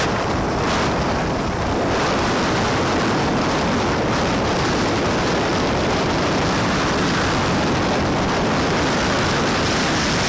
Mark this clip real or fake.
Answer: real